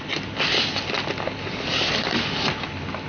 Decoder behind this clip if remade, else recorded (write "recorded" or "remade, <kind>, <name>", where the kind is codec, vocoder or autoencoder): recorded